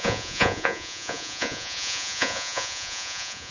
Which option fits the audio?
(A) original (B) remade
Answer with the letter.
B